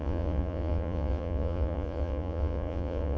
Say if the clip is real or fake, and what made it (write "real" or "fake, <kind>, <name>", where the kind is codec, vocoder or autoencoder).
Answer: fake, vocoder, Vocos